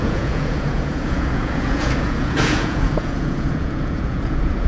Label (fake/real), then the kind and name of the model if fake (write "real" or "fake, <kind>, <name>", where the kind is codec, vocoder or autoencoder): fake, vocoder, Vocos